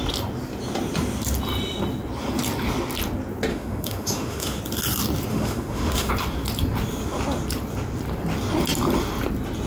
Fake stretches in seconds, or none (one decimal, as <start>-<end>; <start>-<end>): 3.5-4.6; 5.3-6.1